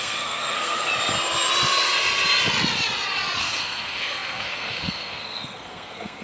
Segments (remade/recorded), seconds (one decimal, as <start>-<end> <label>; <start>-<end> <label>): 0.0-0.9 remade; 0.9-3.4 recorded; 3.4-6.2 remade